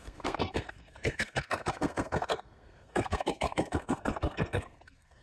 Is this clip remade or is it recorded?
remade